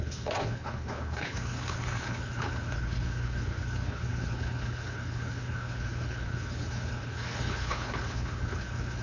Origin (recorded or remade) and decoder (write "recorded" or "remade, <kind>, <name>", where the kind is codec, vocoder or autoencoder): remade, codec, HILCodec